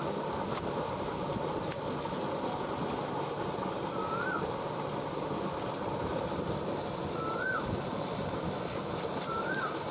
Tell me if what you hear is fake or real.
real